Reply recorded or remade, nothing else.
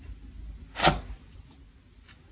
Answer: recorded